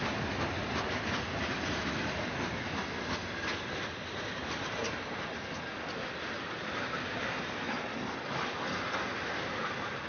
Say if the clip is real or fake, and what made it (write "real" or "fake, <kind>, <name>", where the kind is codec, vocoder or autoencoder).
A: real